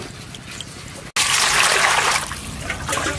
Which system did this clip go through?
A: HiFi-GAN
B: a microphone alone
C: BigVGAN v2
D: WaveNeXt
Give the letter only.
B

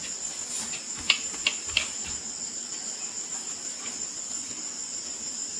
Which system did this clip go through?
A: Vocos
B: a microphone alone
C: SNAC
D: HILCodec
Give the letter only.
B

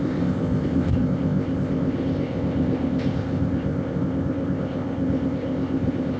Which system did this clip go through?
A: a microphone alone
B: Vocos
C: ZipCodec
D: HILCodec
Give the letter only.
C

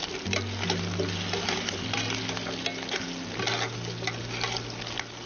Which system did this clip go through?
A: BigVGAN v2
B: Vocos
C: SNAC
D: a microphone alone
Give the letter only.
D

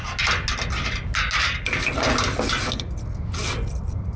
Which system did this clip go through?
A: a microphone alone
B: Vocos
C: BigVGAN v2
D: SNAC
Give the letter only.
A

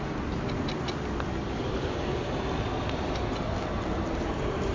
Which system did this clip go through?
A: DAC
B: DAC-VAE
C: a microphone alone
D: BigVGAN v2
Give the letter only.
C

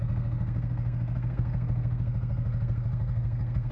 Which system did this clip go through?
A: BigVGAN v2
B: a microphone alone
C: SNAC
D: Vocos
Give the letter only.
C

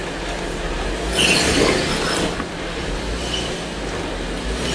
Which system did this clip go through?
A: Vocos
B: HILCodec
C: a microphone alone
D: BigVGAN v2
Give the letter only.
C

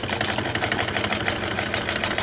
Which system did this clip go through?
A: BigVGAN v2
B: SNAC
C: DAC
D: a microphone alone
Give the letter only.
D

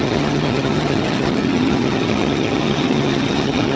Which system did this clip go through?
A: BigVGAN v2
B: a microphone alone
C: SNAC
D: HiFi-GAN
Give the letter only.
D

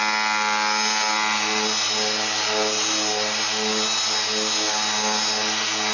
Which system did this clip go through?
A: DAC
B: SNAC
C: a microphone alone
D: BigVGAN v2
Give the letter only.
C